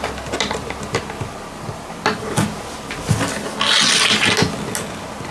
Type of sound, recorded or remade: recorded